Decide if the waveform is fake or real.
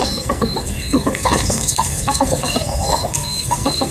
fake